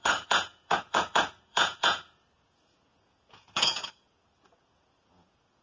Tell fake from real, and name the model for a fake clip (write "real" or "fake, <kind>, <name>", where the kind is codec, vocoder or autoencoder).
fake, vocoder, Vocos